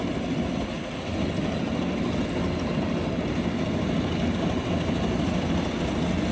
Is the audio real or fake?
real